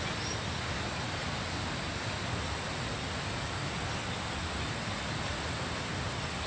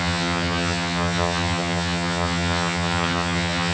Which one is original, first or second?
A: first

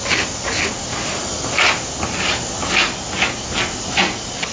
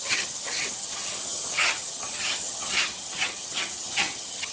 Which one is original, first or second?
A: first